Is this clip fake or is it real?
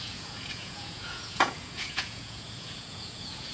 fake